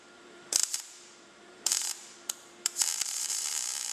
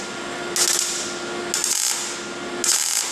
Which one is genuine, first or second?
second